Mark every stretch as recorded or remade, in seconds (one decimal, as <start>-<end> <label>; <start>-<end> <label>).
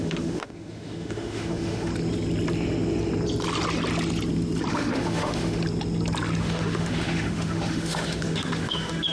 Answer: 0.0-1.9 remade; 1.9-4.7 recorded; 4.7-5.6 remade; 5.6-6.4 recorded; 6.4-9.1 remade